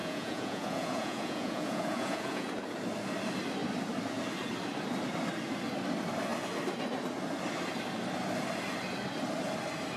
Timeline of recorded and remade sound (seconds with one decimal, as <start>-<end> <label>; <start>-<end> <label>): 0.0-2.5 remade; 2.5-10.0 recorded